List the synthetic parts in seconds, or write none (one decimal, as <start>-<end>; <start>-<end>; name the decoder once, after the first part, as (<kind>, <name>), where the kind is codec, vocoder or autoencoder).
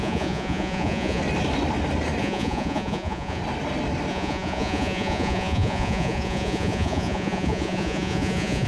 0.0-1.2 (vocoder, Vocos); 2.2-3.4; 4.1-8.7